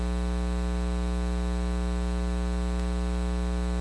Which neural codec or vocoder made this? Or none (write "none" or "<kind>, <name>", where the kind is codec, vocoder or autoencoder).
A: none